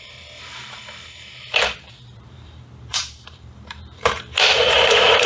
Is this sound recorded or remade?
remade